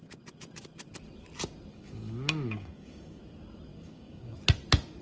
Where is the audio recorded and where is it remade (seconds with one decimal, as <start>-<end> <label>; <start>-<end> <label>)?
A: 0.0-1.7 recorded; 1.7-3.2 remade; 3.2-3.7 recorded; 3.7-4.4 remade; 4.4-5.0 recorded